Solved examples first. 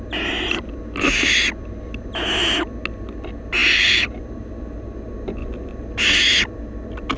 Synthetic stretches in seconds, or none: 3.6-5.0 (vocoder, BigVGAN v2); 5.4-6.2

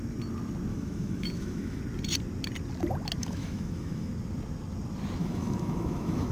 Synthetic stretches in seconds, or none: 0.7-1.8 (autoencoder, DAC-VAE); 3.2-4.1; 5.2-6.3

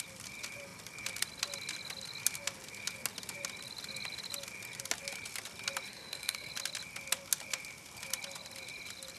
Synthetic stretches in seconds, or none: 5.9-6.5 (codec, SNAC)

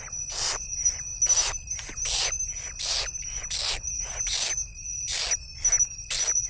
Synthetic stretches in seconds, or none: none

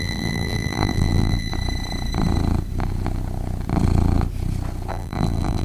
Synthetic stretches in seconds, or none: 0.0-1.5 (vocoder, BigVGAN v2); 4.9-5.6

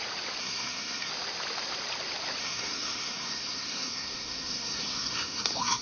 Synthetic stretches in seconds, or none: 0.4-1.1 (codec, SNAC); 2.4-5.8